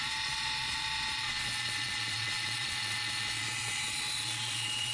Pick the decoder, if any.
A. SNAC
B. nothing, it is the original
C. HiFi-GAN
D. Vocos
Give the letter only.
D